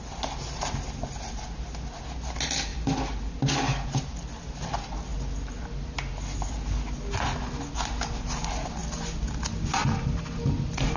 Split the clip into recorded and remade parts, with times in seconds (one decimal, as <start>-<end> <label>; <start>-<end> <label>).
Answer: 0.0-11.0 recorded